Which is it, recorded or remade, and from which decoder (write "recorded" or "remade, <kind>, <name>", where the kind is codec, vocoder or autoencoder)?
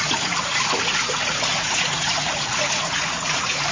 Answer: remade, vocoder, Vocos